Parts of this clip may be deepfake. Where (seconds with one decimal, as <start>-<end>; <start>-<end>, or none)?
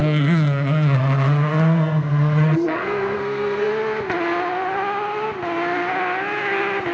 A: 0.0-3.7